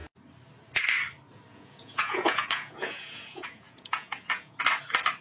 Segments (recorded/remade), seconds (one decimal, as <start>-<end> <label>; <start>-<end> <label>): 0.0-1.5 recorded; 1.5-4.6 remade; 4.6-5.2 recorded